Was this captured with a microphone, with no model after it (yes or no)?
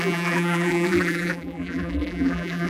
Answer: no